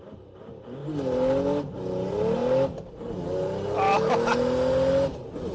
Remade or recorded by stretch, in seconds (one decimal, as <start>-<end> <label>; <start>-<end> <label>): 0.0-5.5 recorded